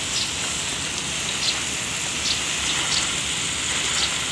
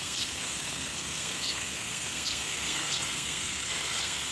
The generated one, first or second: second